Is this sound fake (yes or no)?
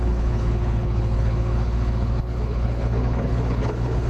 yes